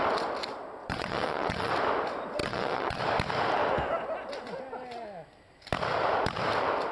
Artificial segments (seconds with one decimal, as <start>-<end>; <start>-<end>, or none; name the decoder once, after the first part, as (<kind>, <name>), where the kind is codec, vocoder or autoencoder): 0.8-1.7 (vocoder, WaveNeXt); 2.4-3.0